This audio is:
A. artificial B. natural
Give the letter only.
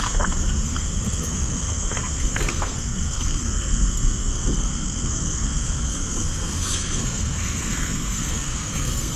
A